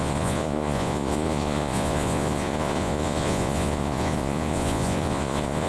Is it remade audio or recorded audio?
remade